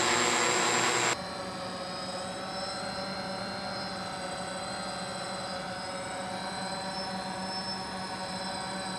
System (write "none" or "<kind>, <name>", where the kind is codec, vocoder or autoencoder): none